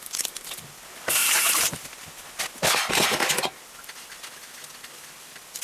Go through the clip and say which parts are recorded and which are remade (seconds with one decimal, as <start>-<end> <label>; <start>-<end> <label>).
0.0-1.2 recorded; 1.2-1.8 remade; 1.8-5.6 recorded